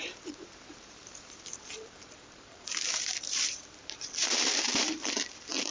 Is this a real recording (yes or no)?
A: no